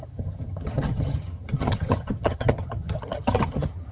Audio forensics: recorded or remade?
remade